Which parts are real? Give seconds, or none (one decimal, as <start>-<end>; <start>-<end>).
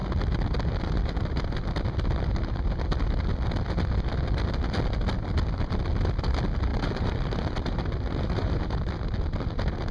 0.0-6.7; 8.9-9.9